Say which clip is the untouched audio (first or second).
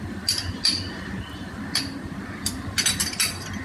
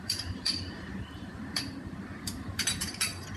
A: first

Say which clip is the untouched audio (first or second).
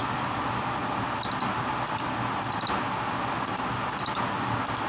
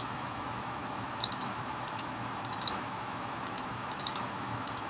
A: first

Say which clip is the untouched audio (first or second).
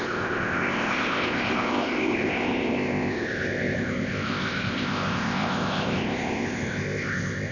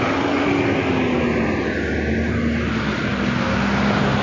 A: second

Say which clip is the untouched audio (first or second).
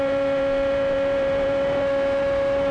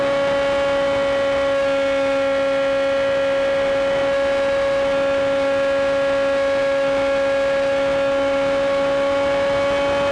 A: second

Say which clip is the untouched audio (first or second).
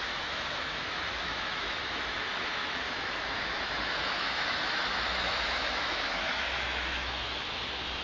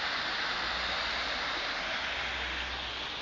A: second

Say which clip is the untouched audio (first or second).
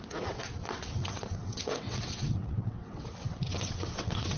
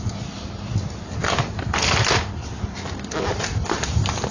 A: second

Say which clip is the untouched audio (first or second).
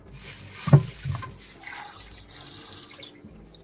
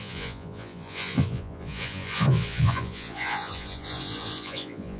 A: first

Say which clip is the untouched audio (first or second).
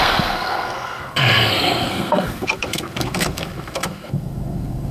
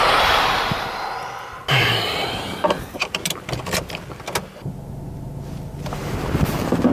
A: second